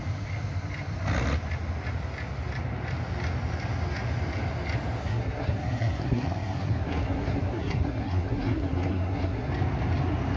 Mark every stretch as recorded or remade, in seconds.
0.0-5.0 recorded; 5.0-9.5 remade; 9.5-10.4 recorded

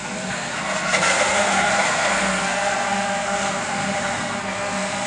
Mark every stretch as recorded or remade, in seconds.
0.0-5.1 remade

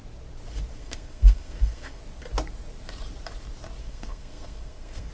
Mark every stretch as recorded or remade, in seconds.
0.0-0.7 recorded; 0.7-2.0 remade; 2.0-3.8 recorded; 3.8-5.1 remade

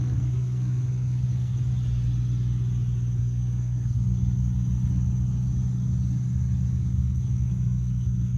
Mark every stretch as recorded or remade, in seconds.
0.0-1.7 remade; 1.7-3.2 recorded; 3.2-4.4 remade; 4.4-6.7 recorded; 6.7-8.4 remade